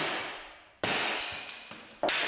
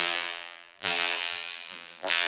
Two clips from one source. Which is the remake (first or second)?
second